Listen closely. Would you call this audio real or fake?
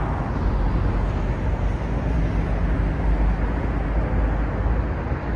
real